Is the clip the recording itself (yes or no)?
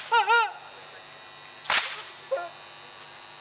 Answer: yes